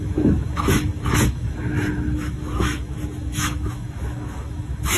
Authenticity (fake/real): fake